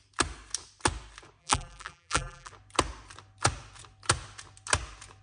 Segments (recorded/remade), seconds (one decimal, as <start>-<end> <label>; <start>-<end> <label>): 0.0-1.4 recorded; 1.4-2.5 remade; 2.5-5.2 recorded